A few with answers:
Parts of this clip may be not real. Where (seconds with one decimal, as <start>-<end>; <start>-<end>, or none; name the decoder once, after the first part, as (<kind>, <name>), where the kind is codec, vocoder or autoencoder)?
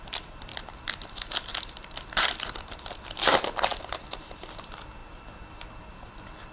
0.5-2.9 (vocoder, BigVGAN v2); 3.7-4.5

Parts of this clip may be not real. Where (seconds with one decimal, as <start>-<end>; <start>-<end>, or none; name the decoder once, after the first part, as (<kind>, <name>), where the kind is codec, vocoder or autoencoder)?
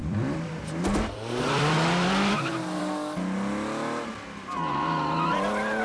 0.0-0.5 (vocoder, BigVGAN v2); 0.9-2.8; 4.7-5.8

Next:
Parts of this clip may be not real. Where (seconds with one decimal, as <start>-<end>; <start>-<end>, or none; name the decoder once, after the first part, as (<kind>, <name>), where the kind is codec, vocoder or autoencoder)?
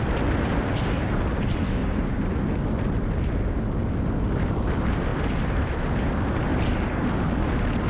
0.0-1.8 (vocoder, BigVGAN v2); 4.3-5.1; 5.6-6.5; 7.0-7.9